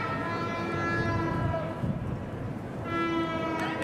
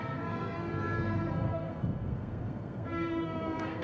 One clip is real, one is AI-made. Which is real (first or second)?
first